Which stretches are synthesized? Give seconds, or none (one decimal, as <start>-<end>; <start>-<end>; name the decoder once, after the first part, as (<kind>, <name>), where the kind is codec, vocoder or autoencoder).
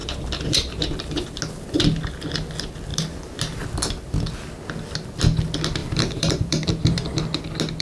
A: 0.0-1.4 (vocoder, BigVGAN v2); 2.9-3.4; 5.8-7.2